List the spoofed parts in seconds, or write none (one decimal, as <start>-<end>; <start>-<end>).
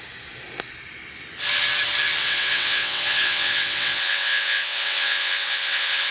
2.2-6.1